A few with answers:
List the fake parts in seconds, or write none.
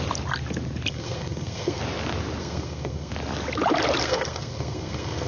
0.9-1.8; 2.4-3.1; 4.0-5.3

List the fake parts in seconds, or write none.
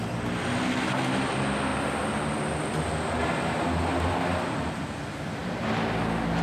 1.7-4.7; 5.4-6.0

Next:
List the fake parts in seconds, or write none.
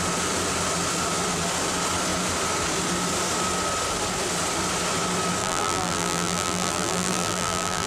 5.4-7.9